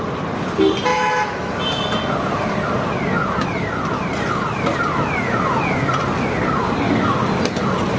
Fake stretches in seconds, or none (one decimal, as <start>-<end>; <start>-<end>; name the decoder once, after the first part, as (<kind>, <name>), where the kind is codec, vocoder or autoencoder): 0.9-1.6 (autoencoder, DAC-VAE)